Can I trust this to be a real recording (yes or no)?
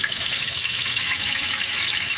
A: no